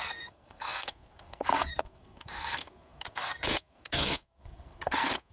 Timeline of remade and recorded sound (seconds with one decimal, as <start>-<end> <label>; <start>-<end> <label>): 0.0-5.3 remade